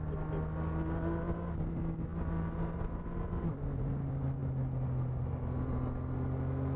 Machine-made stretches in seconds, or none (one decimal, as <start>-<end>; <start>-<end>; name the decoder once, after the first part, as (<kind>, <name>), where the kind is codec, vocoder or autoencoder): none